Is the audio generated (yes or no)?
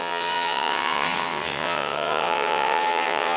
yes